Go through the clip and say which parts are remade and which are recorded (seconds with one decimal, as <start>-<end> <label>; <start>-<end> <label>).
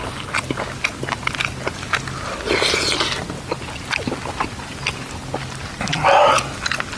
0.0-7.0 recorded